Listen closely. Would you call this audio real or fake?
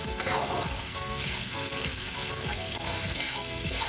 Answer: fake